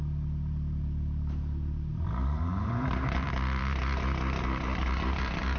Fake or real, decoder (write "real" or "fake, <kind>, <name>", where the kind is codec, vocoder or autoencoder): fake, vocoder, BigVGAN v2